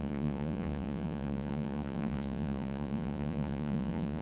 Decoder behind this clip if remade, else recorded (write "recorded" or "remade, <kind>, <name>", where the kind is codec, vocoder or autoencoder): remade, vocoder, Vocos